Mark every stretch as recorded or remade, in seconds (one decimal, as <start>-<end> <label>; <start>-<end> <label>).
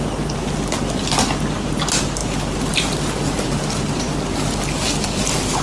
0.0-5.6 recorded